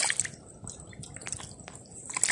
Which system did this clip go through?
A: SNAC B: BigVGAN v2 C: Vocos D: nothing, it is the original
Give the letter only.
D